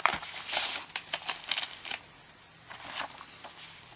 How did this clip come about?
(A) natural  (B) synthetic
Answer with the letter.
A